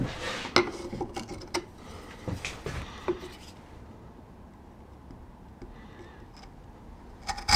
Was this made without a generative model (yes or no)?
yes